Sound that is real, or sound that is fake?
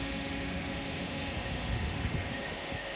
fake